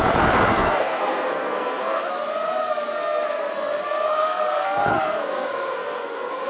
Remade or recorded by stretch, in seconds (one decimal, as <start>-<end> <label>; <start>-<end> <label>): 0.0-0.5 recorded; 0.5-2.1 remade; 2.1-2.6 recorded; 2.6-6.5 remade